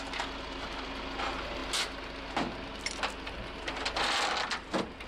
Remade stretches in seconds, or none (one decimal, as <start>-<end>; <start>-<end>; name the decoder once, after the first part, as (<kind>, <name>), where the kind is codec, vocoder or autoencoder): none